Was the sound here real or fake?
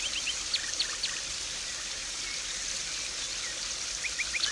real